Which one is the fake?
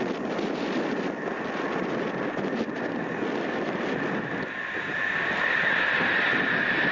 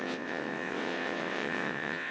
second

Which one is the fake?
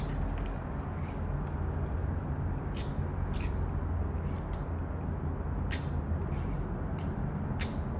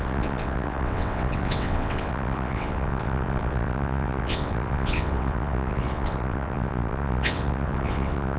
second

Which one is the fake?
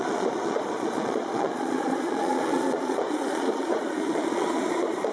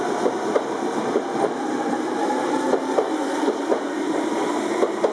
first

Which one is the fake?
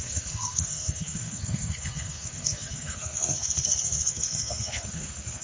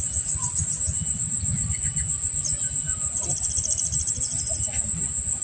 first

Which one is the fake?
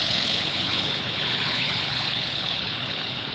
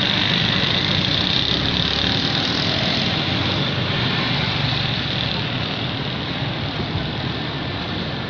first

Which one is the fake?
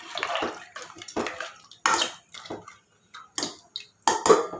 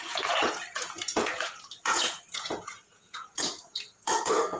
second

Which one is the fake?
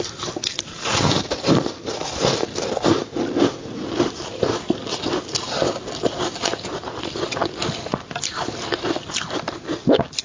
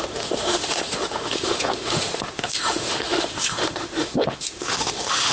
second